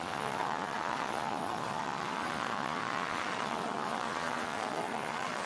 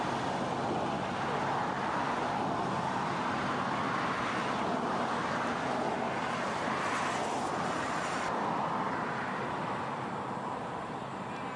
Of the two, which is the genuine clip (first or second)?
second